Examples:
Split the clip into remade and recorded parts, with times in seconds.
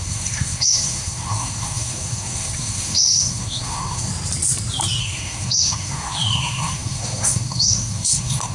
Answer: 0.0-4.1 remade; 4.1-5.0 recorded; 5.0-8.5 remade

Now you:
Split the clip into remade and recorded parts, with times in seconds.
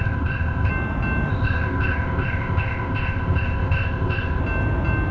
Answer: 0.0-0.7 remade; 0.7-1.3 recorded; 1.3-4.4 remade; 4.4-5.1 recorded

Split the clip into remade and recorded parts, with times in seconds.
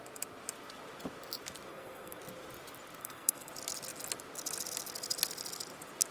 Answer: 0.0-1.7 recorded; 1.7-2.2 remade; 2.2-3.0 recorded; 3.0-3.5 remade; 3.5-6.1 recorded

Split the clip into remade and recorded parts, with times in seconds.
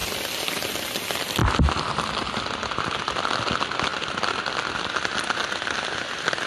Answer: 0.0-6.5 recorded